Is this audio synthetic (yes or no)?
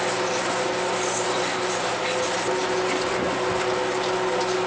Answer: no